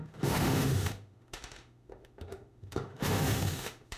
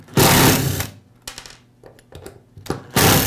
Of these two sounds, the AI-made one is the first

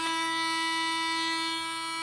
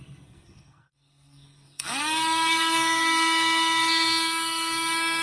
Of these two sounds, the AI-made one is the second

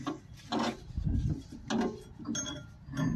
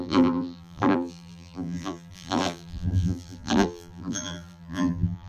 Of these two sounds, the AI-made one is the second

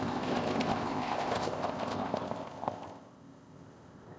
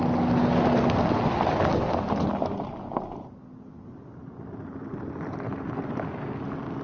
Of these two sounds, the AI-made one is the first